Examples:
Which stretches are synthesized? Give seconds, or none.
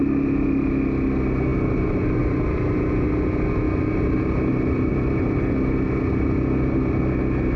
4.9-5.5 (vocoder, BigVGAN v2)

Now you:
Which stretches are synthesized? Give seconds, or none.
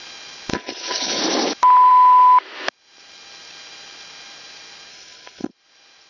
0.5-1.2 (codec, HILCodec); 4.9-5.5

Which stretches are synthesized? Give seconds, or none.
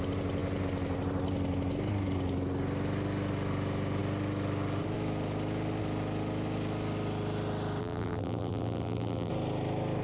7.8-9.3 (vocoder, BigVGAN v2)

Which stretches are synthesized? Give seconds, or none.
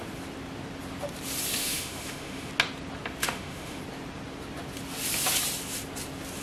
1.6-2.5 (autoencoder, DAC-VAE); 3.2-3.8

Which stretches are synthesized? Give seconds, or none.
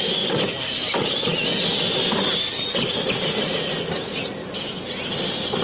none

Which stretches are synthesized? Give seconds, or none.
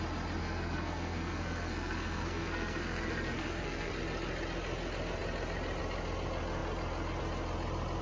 0.4-3.9 (codec, SNAC)